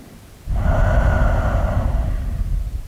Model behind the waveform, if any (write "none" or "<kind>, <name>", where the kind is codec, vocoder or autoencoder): none